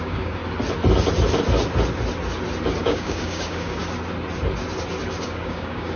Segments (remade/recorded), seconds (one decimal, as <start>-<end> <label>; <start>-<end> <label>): 0.0-0.4 remade; 0.4-2.8 recorded; 2.8-3.8 remade; 3.8-5.2 recorded; 5.2-6.0 remade